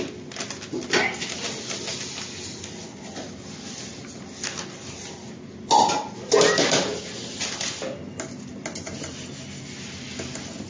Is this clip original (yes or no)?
yes